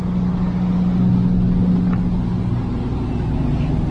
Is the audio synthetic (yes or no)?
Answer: no